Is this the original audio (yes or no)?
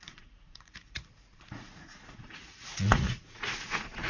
no